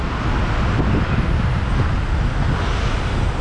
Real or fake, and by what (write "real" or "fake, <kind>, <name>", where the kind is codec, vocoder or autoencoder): real